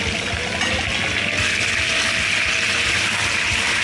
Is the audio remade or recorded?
recorded